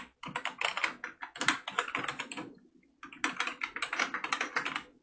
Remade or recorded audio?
recorded